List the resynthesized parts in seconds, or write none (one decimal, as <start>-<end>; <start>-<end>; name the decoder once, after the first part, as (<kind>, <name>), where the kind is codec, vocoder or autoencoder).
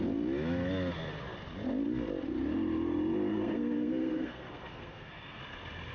3.3-5.4 (codec, SNAC)